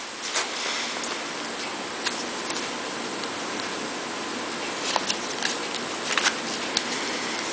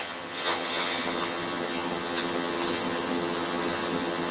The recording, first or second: first